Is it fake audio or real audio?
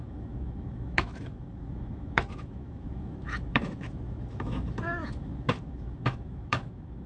fake